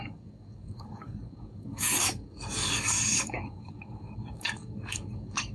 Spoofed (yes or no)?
yes